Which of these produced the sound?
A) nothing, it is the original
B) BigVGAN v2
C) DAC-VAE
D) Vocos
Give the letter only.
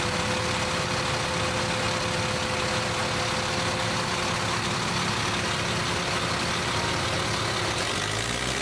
A